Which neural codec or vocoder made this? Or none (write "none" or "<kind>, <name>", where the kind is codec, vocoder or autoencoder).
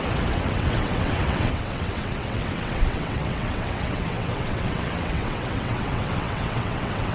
vocoder, WaveNeXt